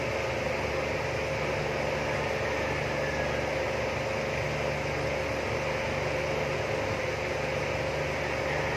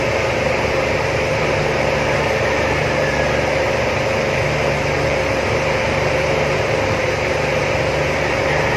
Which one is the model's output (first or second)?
second